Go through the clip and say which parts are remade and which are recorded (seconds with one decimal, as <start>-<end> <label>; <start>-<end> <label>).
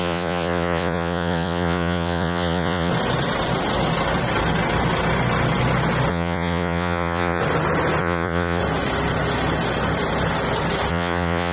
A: 0.0-2.9 remade; 2.9-6.1 recorded; 6.1-7.4 remade; 7.4-8.0 recorded; 8.0-8.6 remade; 8.6-10.9 recorded; 10.9-11.5 remade